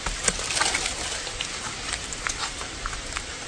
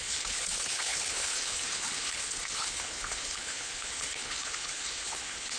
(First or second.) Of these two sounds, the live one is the first